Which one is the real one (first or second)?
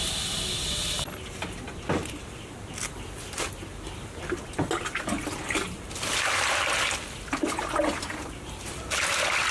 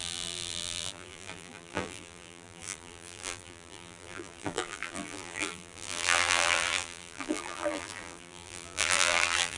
first